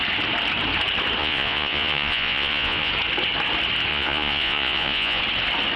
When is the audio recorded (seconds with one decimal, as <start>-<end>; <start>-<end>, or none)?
0.0-1.2; 2.9-3.9; 5.2-5.8